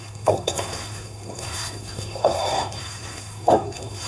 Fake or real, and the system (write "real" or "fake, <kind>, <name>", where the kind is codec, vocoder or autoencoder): fake, codec, SNAC